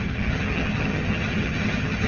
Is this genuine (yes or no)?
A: no